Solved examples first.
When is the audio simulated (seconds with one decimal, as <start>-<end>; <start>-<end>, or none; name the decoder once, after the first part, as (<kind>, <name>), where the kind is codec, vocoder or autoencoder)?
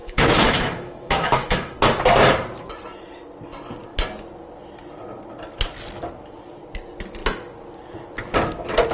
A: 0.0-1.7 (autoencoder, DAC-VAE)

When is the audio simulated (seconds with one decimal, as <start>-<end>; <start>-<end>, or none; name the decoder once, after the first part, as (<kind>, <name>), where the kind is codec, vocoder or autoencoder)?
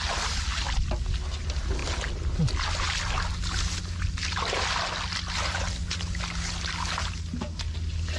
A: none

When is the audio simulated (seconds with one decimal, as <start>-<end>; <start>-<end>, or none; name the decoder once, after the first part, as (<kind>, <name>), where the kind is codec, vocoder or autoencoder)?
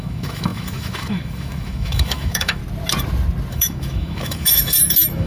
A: 0.0-2.6 (autoencoder, DAC-VAE); 3.5-5.3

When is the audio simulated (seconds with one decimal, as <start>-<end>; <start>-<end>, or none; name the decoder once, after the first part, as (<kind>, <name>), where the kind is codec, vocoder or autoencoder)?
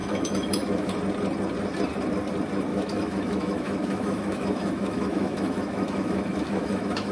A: 0.0-0.9 (autoencoder, DAC-VAE); 2.7-7.1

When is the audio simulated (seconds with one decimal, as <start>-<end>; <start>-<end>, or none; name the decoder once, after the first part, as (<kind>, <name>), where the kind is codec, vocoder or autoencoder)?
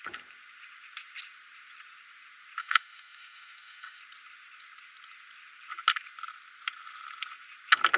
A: 2.6-4.0 (autoencoder, DAC-VAE)